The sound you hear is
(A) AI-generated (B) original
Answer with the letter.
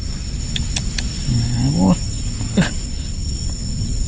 B